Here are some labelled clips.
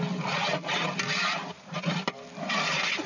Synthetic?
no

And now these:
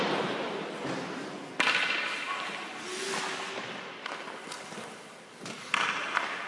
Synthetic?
no